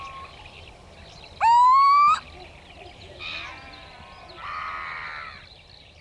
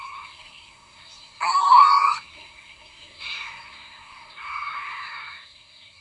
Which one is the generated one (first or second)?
second